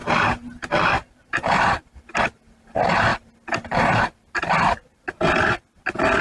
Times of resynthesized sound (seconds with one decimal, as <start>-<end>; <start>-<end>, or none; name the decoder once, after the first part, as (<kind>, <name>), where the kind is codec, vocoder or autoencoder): none